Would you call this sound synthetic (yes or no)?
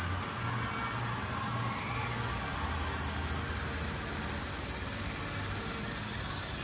no